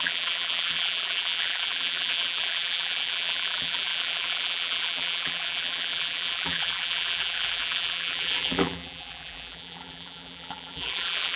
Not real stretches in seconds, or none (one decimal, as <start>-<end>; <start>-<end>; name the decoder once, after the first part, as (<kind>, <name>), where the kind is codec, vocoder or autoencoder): 0.0-11.4 (vocoder, BigVGAN v2)